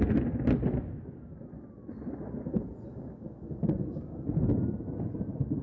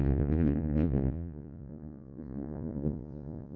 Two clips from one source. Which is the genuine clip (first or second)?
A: first